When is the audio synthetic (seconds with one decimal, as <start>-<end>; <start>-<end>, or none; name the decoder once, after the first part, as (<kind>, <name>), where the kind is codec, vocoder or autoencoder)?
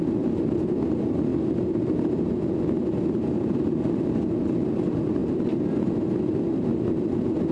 none